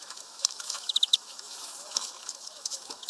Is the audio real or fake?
fake